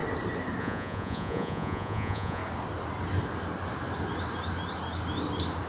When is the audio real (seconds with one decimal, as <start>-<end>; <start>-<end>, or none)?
0.0-0.6; 2.4-5.7